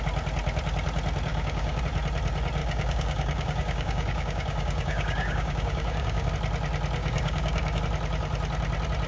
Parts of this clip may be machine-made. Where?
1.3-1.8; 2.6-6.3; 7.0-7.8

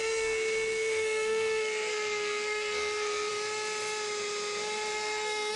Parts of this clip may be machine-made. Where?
0.0-3.3; 4.9-5.6

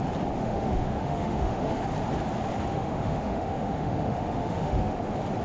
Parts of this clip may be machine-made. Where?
0.4-1.8; 2.7-5.0

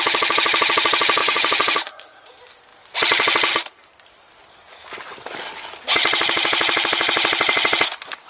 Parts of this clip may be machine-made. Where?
1.2-2.3

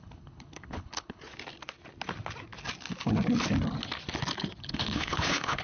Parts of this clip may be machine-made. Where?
0.0-1.2; 4.6-5.6

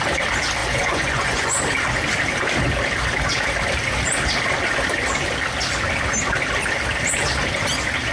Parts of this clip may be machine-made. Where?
0.6-1.6

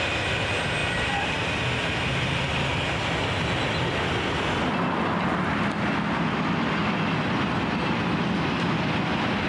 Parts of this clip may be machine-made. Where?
0.8-4.1; 6.8-9.5